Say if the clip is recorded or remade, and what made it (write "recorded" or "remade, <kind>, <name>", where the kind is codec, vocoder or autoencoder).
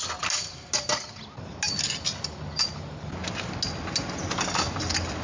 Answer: recorded